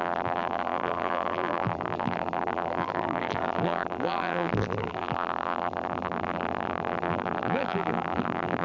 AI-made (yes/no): yes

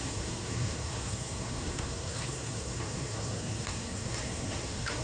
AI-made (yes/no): yes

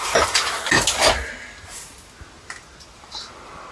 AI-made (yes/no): no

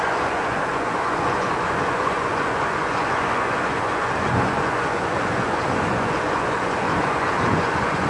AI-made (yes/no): yes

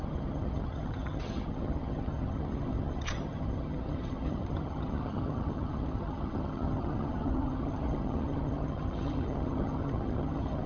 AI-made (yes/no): yes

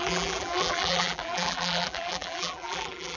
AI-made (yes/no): yes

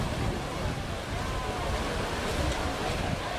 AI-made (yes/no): no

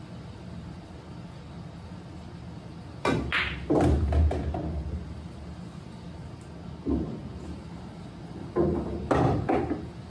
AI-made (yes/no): no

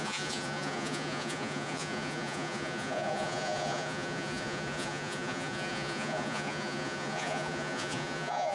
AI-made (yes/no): yes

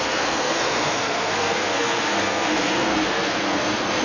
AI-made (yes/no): yes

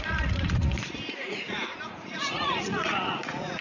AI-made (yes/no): yes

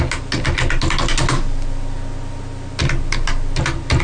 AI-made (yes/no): no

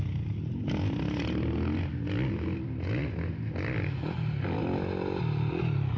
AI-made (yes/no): no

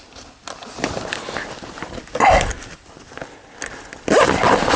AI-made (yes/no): no